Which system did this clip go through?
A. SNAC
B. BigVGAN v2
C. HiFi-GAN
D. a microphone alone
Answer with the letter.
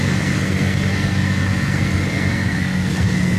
A